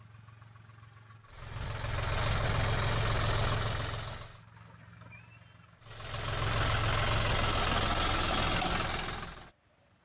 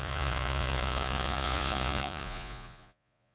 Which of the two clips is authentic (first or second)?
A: first